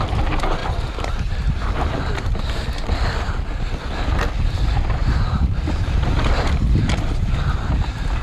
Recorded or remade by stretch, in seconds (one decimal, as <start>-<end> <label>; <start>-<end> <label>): 0.0-0.6 recorded; 0.6-3.9 remade; 3.9-5.0 recorded; 5.0-7.3 remade; 7.3-8.2 recorded